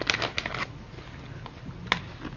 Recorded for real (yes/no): yes